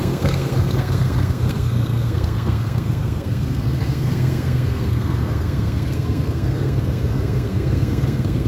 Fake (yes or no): yes